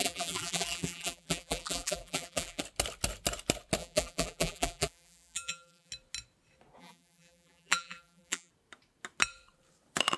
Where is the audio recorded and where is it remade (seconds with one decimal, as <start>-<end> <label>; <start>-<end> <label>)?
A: 0.0-2.6 remade; 2.6-3.8 recorded; 3.8-5.9 remade; 5.9-6.8 recorded; 6.8-8.5 remade; 8.5-10.2 recorded